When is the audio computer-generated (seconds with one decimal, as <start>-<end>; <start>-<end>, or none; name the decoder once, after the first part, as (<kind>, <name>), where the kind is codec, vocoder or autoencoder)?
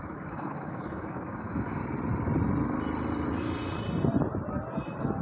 0.0-1.8 (autoencoder, DAC-VAE)